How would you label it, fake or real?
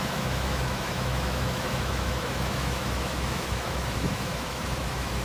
fake